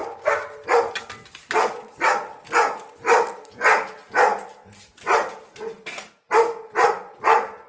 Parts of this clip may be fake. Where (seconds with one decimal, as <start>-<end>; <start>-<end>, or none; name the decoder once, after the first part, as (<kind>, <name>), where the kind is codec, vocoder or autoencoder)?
none